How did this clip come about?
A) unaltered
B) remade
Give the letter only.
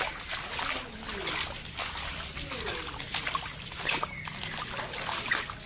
A